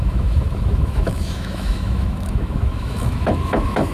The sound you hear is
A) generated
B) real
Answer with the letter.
A